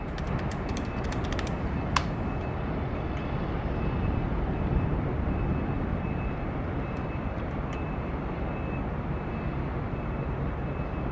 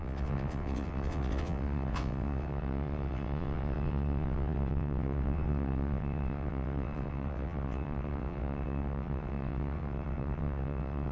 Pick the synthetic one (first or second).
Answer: second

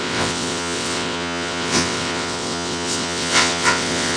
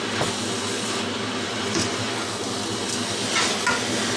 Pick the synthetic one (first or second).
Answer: first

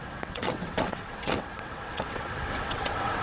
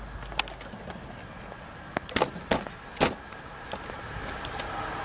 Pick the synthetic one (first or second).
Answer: first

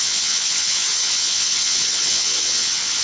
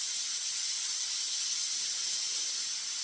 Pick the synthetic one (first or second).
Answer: first